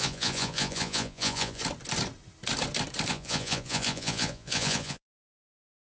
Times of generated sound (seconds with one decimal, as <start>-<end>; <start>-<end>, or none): 0.0-1.6; 3.1-5.9